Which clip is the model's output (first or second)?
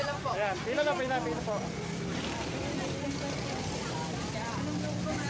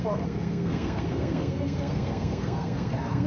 second